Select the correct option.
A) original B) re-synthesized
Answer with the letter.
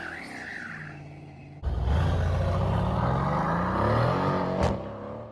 A